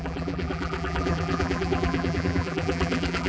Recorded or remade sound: remade